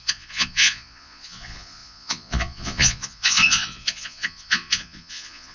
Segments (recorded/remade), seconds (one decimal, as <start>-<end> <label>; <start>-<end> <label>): 0.0-5.5 remade